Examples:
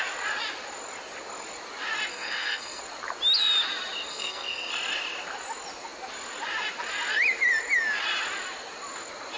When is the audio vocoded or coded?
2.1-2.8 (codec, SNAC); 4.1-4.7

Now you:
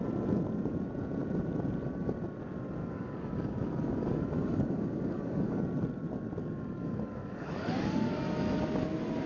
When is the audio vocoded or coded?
2.8-5.6 (codec, DAC); 6.4-8.2

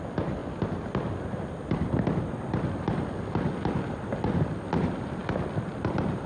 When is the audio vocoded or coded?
none

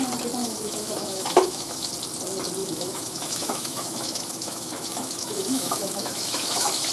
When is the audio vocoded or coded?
0.4-1.9 (autoencoder, DAC-VAE); 2.6-6.9

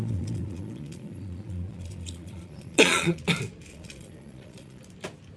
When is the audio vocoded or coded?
0.0-3.2 (vocoder, Vocos); 3.7-4.8